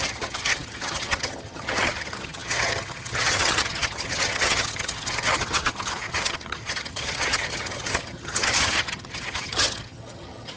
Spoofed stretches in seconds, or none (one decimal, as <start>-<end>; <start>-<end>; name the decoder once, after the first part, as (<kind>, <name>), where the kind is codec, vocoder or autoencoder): 0.0-10.6 (vocoder, HiFi-GAN)

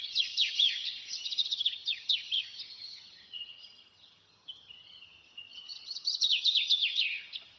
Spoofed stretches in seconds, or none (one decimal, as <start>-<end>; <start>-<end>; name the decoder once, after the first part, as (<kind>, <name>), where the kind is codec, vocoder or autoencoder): 0.0-7.6 (vocoder, HiFi-GAN)

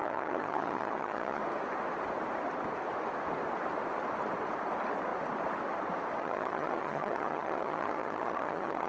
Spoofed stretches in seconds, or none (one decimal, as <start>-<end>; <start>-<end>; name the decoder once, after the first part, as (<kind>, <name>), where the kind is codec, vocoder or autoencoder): 0.0-1.4 (vocoder, HiFi-GAN); 6.2-8.9

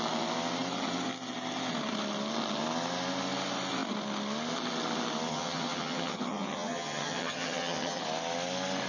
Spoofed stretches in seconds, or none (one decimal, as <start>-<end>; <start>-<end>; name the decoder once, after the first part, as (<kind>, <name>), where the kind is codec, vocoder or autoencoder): 5.3-8.0 (vocoder, HiFi-GAN)

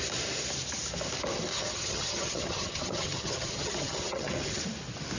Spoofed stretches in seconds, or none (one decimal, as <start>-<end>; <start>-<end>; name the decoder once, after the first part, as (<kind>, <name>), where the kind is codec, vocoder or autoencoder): 1.5-4.6 (vocoder, HiFi-GAN)

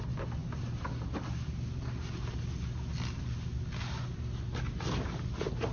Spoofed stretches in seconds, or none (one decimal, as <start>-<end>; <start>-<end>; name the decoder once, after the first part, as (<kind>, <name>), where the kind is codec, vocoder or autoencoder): none